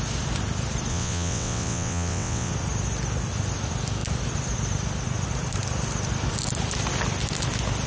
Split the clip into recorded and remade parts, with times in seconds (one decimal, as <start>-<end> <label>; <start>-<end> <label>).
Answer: 0.0-0.9 recorded; 0.9-2.5 remade; 2.5-7.9 recorded